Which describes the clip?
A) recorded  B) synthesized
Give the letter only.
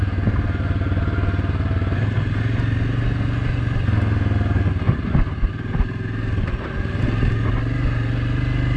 A